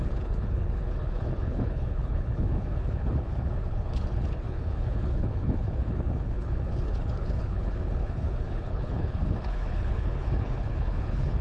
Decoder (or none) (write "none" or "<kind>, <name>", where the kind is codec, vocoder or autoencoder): codec, HILCodec